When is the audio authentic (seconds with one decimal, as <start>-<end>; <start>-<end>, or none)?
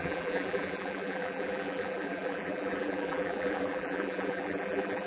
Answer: none